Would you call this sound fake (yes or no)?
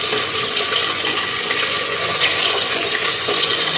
yes